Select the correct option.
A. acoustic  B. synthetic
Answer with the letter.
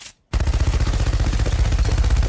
A